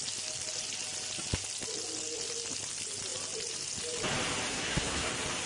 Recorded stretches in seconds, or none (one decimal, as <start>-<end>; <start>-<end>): 0.0-4.5; 5.1-5.5